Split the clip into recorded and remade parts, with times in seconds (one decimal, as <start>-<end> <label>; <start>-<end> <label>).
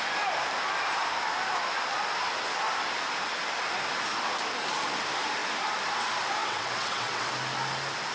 0.0-6.4 recorded; 6.4-7.3 remade; 7.3-8.1 recorded